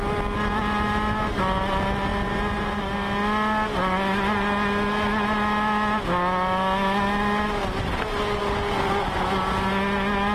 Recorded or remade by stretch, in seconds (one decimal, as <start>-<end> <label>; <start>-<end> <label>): 0.0-2.1 recorded; 2.1-2.8 remade; 2.8-10.3 recorded